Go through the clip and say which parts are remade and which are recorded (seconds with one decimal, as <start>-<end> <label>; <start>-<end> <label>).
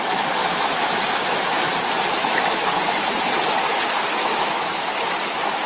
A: 0.0-0.4 recorded; 0.4-1.0 remade; 1.0-2.2 recorded; 2.2-3.1 remade; 3.1-4.2 recorded; 4.2-4.9 remade; 4.9-5.7 recorded